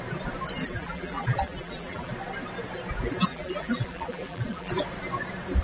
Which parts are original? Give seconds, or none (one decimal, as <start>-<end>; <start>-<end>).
0.0-0.6; 2.1-3.3; 4.8-5.6